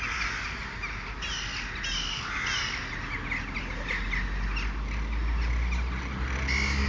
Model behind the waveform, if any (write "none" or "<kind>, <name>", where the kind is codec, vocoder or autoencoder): none